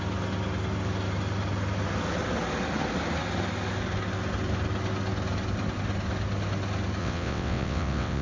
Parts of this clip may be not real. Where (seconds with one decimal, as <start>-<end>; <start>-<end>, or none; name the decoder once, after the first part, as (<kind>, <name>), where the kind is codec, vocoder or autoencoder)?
7.0-8.2 (vocoder, WaveNeXt)